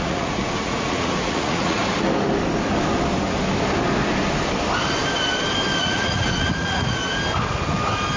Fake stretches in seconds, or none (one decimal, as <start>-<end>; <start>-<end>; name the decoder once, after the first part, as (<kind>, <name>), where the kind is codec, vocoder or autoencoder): 0.0-1.8 (vocoder, Vocos); 5.8-7.0